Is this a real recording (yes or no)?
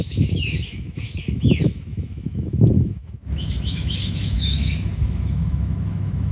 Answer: no